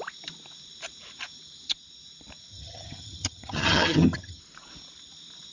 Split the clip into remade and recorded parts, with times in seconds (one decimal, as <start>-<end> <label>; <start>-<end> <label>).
0.0-2.5 recorded; 2.5-4.4 remade; 4.4-5.5 recorded